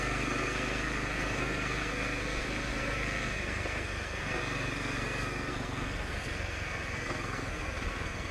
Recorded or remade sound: remade